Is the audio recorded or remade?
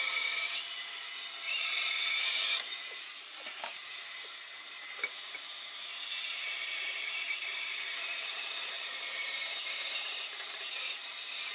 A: remade